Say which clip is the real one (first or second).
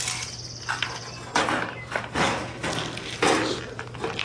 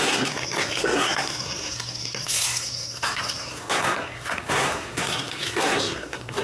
first